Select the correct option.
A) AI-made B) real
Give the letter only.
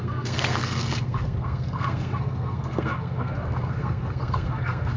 A